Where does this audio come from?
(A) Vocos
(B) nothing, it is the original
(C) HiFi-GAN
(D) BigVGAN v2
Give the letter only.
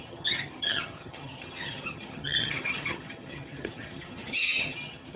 C